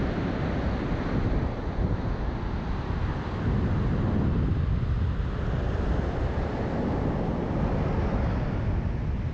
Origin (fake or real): real